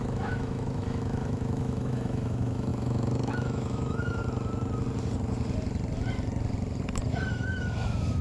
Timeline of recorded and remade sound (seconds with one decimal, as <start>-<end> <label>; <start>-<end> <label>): 0.0-4.2 remade; 4.2-7.1 recorded; 7.1-8.2 remade